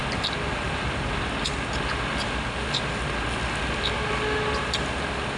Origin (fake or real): real